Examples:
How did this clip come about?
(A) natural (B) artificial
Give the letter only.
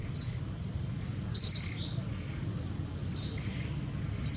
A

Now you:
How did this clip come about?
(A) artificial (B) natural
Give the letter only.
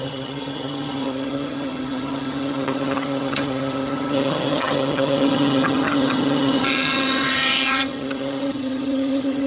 A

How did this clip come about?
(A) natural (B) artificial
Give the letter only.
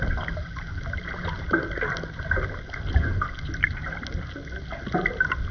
A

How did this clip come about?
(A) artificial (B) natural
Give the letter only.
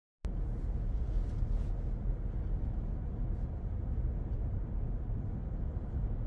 B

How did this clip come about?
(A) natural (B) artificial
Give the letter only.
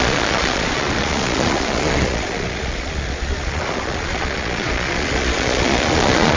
B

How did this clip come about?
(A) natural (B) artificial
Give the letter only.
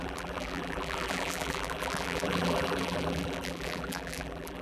B